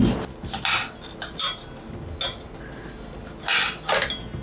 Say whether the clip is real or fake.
real